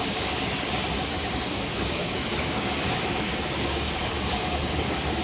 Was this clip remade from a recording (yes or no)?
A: yes